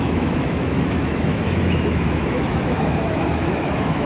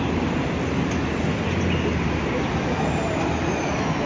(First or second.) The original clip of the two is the second